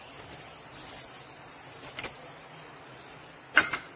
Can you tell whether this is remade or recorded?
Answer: recorded